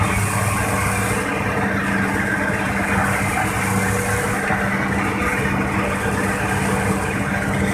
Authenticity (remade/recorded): recorded